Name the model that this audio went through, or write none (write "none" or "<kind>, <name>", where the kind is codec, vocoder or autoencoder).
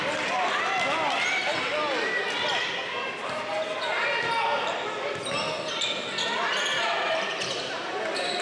none